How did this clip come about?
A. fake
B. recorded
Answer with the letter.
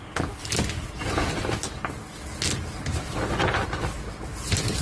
B